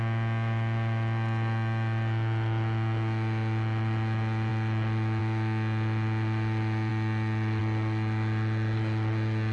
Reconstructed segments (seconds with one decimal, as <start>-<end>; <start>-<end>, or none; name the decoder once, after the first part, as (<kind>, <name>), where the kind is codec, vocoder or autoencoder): none